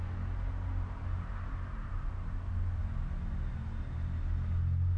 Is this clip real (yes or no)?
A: yes